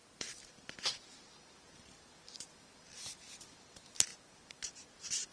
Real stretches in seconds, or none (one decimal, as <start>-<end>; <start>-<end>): 0.0-5.3